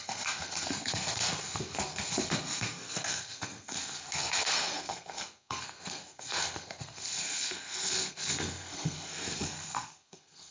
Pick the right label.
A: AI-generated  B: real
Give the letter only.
A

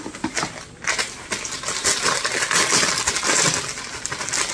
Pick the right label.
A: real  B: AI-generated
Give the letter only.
A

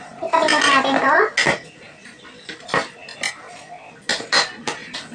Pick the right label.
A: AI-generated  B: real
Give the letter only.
B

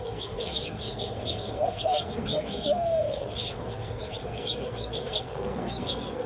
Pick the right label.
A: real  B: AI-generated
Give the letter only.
B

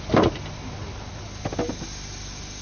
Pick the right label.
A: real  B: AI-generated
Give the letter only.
A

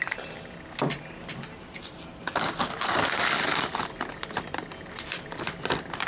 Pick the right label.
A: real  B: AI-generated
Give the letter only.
A